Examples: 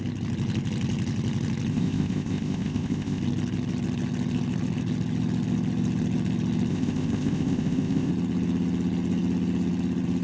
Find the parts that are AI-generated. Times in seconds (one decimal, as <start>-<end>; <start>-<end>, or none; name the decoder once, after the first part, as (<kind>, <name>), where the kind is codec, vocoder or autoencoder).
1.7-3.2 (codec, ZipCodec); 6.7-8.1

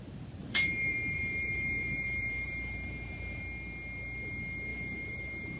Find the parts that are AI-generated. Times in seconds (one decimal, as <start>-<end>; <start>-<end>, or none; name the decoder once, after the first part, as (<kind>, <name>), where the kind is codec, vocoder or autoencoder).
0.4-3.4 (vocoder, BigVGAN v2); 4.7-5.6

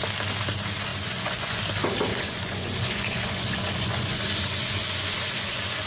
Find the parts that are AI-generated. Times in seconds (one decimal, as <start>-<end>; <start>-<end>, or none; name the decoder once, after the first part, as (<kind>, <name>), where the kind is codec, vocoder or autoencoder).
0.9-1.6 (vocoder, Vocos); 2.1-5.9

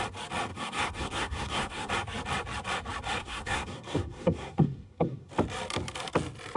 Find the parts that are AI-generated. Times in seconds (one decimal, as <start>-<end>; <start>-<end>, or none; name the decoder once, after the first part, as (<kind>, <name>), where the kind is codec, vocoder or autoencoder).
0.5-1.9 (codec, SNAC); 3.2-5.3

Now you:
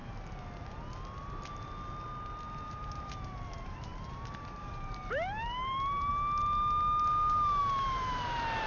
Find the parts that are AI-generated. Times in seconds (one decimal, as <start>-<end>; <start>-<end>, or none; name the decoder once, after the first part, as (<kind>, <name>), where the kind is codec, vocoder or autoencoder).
2.7-6.1 (vocoder, BigVGAN v2); 7.6-8.7

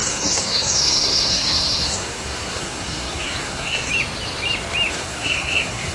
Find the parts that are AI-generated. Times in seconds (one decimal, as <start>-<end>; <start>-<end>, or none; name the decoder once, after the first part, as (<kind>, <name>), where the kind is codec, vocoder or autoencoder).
0.0-3.9 (codec, SNAC); 4.9-5.9